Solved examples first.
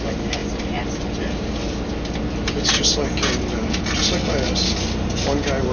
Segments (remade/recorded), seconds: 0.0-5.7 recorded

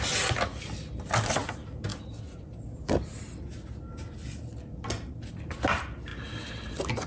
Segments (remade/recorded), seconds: 0.0-7.1 recorded

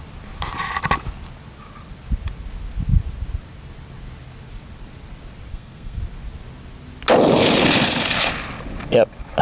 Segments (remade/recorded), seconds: 0.0-5.5 recorded; 5.5-6.0 remade; 6.0-9.4 recorded